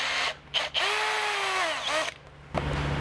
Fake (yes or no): no